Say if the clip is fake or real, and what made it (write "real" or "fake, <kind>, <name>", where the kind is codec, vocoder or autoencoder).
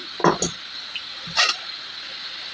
real